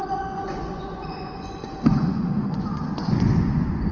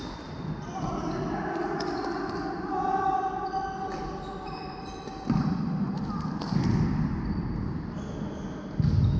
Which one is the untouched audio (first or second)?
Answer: second